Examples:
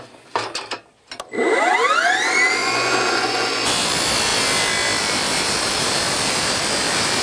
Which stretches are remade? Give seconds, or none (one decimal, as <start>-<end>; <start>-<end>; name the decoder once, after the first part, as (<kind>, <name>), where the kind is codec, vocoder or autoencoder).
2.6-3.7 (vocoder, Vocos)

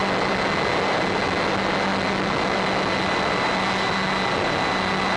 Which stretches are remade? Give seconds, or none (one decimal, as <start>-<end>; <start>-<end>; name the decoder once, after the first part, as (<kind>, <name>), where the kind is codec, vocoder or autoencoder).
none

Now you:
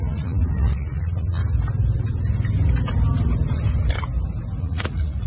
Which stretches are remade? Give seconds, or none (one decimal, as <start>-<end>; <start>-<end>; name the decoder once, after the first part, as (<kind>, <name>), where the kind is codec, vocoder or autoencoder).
0.0-1.4 (vocoder, Vocos); 4.6-5.3

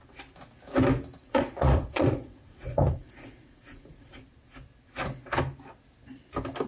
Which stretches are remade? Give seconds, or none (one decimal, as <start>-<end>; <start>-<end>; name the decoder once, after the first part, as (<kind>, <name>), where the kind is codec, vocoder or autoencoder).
1.2-4.2 (vocoder, Vocos)

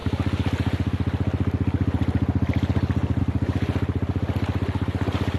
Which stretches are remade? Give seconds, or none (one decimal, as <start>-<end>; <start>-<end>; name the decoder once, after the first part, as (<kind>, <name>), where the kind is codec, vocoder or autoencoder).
none

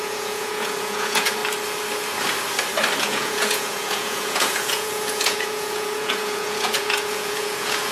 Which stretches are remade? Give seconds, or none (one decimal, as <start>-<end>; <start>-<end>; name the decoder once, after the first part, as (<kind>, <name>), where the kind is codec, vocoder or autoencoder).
0.0-1.4 (vocoder, Vocos); 3.0-7.9